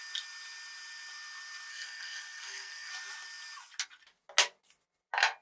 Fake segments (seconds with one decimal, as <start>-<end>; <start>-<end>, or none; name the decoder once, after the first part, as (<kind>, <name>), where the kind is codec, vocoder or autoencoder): 1.7-2.9 (codec, SNAC)